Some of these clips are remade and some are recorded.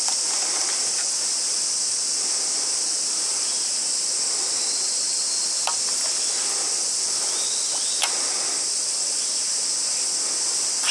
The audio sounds recorded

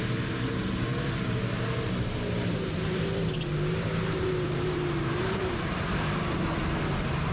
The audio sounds remade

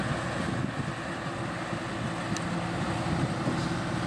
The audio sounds recorded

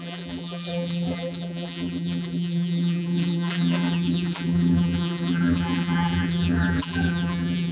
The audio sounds remade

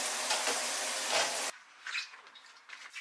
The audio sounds recorded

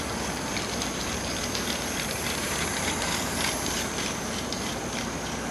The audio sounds remade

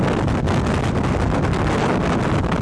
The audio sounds recorded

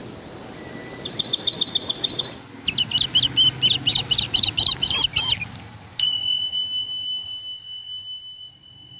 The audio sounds recorded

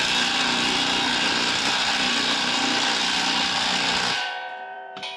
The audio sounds remade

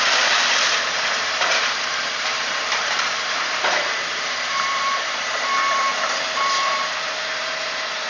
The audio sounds remade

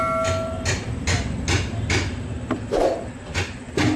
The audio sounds recorded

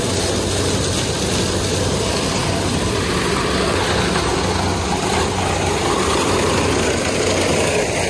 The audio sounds recorded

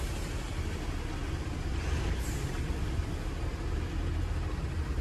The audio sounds recorded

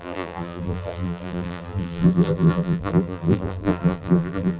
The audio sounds remade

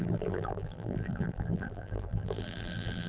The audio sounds remade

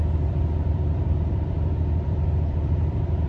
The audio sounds remade